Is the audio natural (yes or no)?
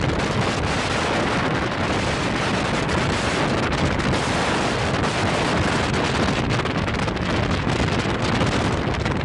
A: yes